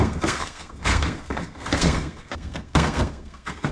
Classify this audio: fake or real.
fake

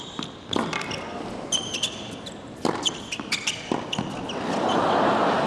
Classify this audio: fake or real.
real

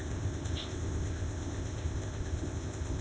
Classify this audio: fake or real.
fake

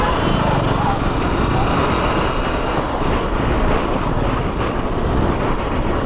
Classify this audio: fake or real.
real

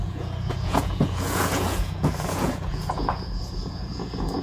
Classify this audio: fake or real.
fake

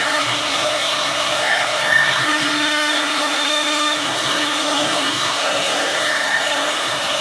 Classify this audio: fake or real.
fake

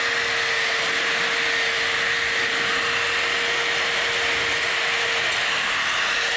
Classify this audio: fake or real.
real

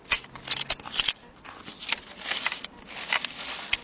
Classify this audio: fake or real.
real